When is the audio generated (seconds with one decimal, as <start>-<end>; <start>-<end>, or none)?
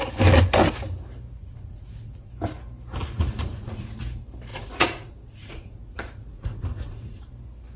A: 1.4-2.3; 3.0-3.9; 4.5-7.3